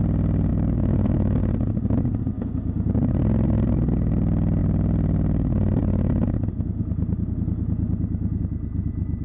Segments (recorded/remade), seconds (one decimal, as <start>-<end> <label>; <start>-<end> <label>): 0.0-0.5 recorded; 0.5-1.4 remade; 1.4-9.2 recorded